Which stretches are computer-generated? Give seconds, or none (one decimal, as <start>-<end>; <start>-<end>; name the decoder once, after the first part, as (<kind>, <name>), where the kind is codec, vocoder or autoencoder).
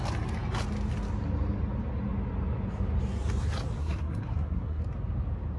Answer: 3.8-4.8 (codec, SNAC)